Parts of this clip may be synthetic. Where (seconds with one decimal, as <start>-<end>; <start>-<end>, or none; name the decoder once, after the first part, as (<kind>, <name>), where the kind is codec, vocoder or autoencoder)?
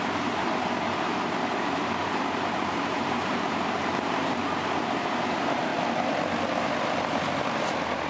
0.0-5.7 (vocoder, BigVGAN v2)